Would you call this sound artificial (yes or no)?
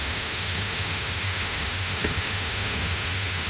yes